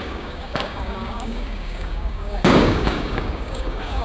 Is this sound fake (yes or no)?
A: yes